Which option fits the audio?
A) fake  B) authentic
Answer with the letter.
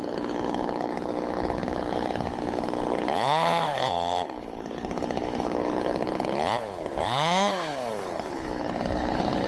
A